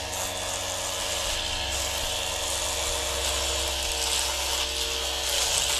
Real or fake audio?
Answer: real